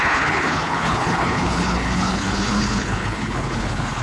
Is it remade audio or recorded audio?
remade